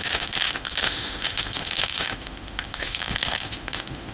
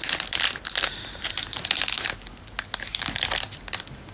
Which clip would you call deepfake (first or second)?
first